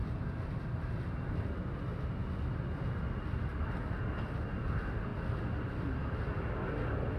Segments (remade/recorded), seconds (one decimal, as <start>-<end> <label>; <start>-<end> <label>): 0.0-3.5 recorded; 3.5-4.0 remade; 4.0-7.2 recorded

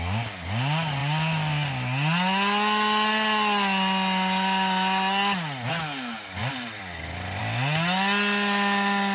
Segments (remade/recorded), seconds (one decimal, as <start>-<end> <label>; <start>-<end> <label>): 0.0-6.4 recorded; 6.4-7.4 remade; 7.4-9.1 recorded